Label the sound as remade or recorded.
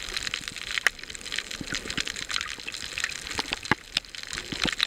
recorded